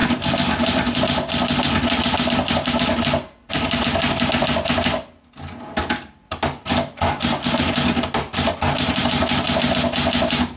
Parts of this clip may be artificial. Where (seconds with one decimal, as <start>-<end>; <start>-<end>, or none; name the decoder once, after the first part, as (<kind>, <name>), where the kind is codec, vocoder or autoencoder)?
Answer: 0.0-1.0 (vocoder, BigVGAN v2)